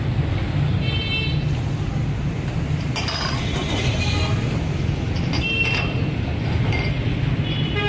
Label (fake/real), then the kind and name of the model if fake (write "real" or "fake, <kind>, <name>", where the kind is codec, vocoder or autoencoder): real